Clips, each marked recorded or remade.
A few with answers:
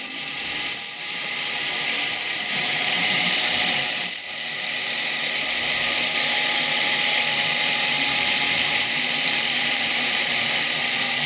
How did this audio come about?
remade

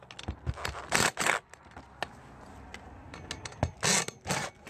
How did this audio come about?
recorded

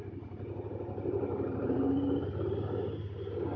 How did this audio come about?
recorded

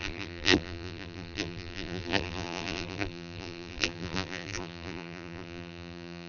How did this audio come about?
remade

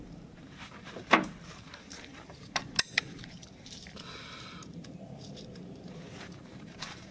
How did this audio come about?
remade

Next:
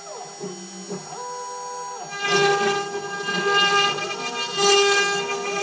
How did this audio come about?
recorded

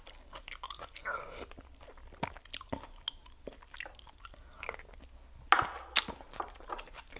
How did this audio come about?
recorded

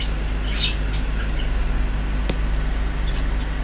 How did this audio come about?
remade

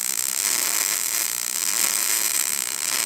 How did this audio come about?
remade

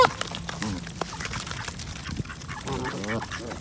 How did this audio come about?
recorded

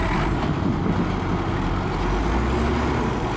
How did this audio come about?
recorded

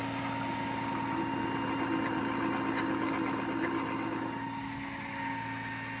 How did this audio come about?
recorded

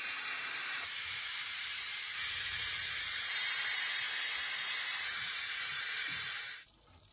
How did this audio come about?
remade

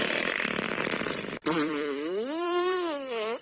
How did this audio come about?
remade